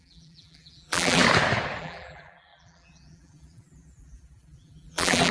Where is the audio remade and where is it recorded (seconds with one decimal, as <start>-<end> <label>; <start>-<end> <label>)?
0.0-1.2 remade; 1.2-1.8 recorded; 1.8-5.3 remade